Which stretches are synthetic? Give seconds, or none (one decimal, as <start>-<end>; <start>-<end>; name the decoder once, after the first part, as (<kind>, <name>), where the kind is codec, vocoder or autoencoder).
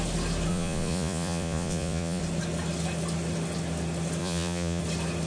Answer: 0.5-2.2 (vocoder, Vocos); 4.2-4.8